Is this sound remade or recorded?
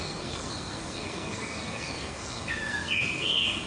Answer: remade